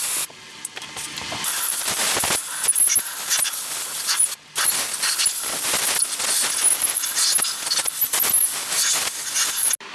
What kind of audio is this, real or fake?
real